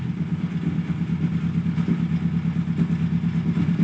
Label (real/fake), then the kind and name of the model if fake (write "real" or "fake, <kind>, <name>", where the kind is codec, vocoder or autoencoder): real